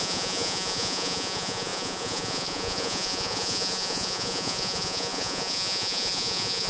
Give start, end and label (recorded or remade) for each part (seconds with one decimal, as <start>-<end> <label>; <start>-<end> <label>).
0.0-6.7 remade